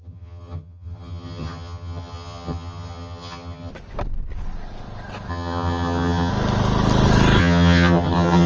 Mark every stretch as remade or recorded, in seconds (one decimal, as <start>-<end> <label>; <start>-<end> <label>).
0.0-3.7 remade; 3.7-5.3 recorded; 5.3-6.3 remade; 6.3-7.4 recorded; 7.4-8.5 remade